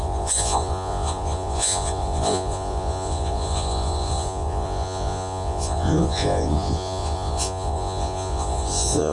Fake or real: fake